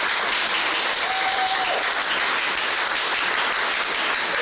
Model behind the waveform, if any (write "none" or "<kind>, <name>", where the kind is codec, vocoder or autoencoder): none